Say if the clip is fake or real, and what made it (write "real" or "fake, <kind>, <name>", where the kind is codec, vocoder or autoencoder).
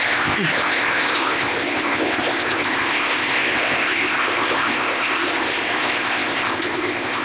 fake, codec, ZipCodec